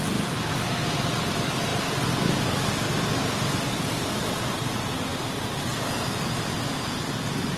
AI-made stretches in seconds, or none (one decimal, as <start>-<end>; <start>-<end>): 1.7-4.4